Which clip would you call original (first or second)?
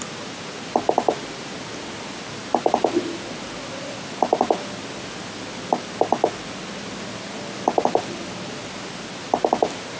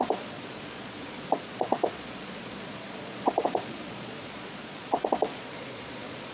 first